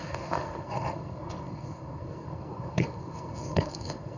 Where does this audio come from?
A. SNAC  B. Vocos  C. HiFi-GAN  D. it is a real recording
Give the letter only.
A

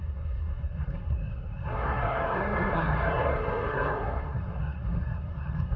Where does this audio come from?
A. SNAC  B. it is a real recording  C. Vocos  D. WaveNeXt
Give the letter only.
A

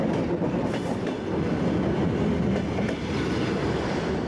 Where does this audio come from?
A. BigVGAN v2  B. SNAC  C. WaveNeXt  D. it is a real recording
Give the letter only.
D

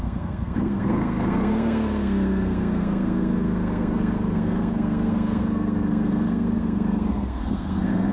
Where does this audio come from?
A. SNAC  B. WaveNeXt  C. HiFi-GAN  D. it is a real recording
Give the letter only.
A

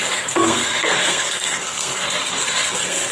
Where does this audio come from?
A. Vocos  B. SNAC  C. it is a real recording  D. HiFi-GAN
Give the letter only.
B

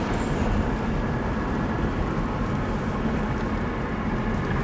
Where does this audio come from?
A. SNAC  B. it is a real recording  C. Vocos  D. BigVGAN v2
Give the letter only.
B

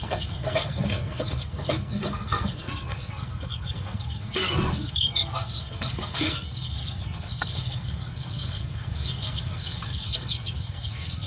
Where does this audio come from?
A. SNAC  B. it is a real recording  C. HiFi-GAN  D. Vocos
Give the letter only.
A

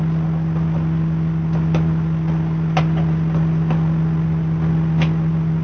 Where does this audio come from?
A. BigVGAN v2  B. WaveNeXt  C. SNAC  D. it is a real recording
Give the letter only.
D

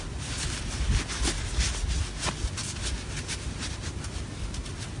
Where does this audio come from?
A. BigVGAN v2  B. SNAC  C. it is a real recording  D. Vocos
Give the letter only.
C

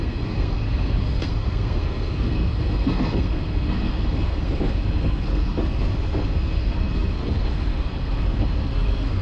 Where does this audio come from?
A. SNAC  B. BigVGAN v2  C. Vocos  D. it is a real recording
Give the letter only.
A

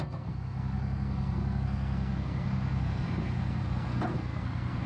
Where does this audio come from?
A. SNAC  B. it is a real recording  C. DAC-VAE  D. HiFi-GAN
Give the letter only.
A